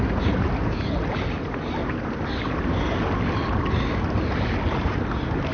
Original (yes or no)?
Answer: yes